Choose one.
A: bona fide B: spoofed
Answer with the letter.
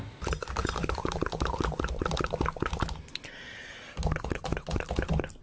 A